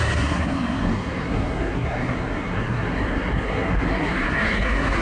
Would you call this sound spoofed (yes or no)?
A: yes